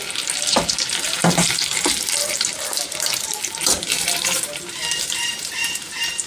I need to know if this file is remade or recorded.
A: remade